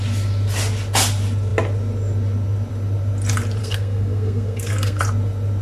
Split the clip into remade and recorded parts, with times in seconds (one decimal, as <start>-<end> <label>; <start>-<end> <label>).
0.0-3.6 recorded; 3.6-5.0 remade; 5.0-5.6 recorded